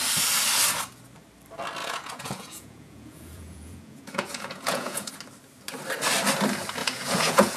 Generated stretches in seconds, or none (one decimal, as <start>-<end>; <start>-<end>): 1.8-5.1; 6.8-7.6